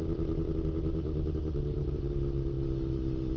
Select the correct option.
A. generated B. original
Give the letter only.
B